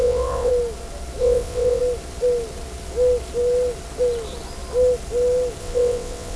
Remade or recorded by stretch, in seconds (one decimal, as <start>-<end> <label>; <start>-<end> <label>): 0.0-0.5 remade; 0.5-1.2 recorded; 1.2-1.8 remade; 1.8-5.6 recorded; 5.6-6.4 remade